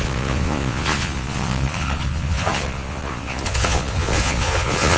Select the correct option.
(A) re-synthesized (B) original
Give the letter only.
A